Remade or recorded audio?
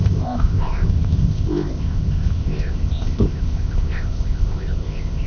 remade